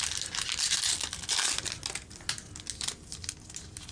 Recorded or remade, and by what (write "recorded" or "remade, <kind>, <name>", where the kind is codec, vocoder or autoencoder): recorded